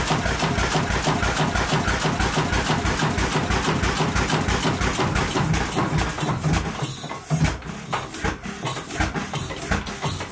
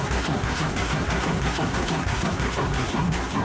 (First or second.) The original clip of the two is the first